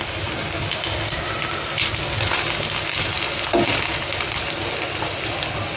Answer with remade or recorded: recorded